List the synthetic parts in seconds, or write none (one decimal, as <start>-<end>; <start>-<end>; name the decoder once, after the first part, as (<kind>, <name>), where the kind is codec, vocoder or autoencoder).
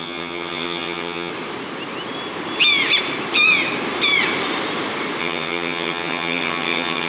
0.0-1.3 (vocoder, HiFi-GAN); 5.2-7.1